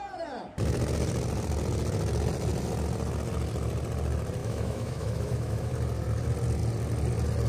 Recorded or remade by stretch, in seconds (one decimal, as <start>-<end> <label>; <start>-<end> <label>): 0.0-4.4 recorded; 4.4-5.7 remade; 5.7-7.5 recorded